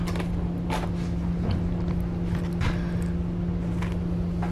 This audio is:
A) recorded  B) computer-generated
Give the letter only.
A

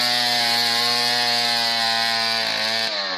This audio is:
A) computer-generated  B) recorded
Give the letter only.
B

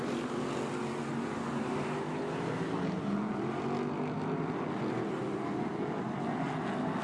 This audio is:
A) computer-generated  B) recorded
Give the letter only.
B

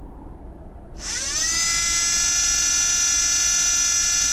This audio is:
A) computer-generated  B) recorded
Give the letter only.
B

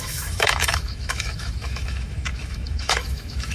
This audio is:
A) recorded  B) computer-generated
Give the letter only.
B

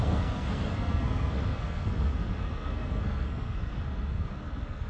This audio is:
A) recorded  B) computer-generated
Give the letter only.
B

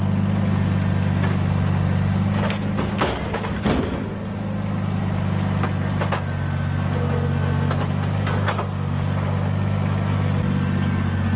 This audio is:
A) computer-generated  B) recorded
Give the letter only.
B